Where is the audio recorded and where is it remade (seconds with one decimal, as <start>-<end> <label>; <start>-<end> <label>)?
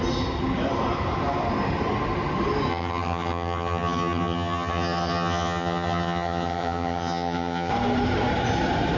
0.0-2.7 recorded; 2.7-7.7 remade; 7.7-9.0 recorded